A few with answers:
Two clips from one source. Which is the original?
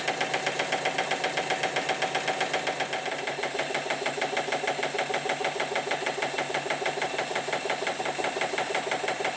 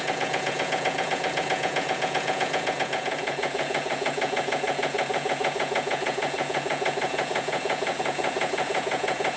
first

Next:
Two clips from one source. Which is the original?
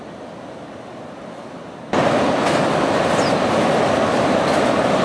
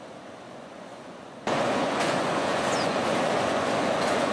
first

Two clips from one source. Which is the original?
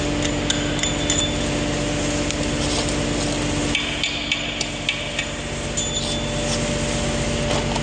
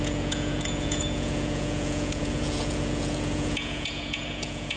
first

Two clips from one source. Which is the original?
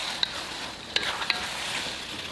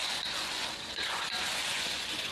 first